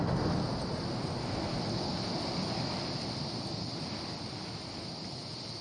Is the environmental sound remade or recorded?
recorded